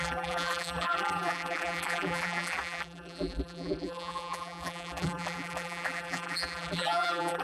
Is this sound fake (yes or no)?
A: yes